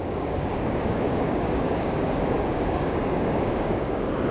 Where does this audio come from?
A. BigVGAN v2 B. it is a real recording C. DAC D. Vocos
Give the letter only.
C